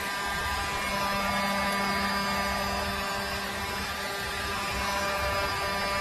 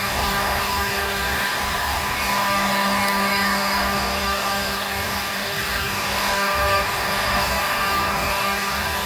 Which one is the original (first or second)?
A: first